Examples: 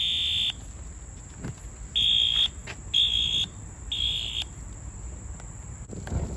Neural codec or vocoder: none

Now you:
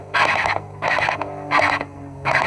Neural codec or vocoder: codec, SNAC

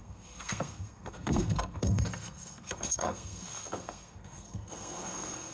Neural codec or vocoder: codec, SNAC